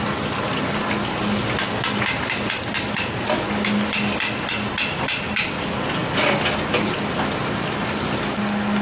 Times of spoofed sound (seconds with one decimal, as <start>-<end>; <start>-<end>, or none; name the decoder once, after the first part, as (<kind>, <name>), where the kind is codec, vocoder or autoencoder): none